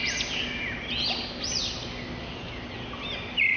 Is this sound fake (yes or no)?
no